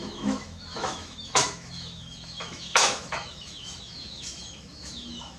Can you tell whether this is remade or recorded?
remade